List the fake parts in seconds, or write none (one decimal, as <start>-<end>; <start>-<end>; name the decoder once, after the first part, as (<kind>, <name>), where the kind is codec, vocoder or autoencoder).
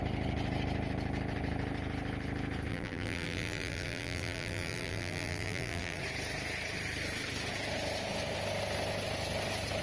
2.7-6.0 (vocoder, BigVGAN v2)